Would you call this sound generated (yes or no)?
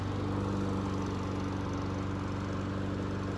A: no